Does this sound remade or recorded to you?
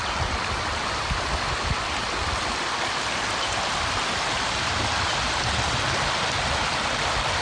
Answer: recorded